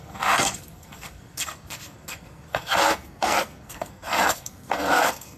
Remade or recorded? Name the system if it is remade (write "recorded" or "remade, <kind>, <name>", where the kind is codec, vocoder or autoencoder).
remade, codec, SNAC